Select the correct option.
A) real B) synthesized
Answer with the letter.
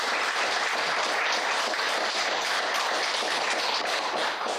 A